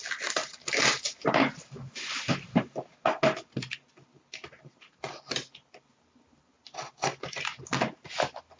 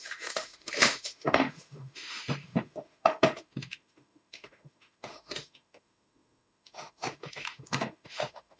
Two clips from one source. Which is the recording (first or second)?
first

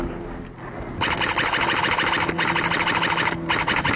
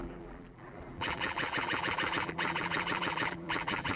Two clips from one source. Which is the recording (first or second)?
first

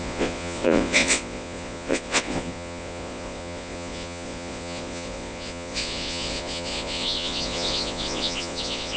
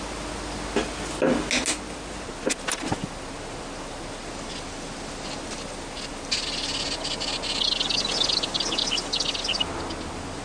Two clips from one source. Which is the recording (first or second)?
second